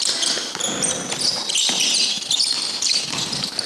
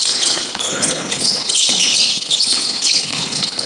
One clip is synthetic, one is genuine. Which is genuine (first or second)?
first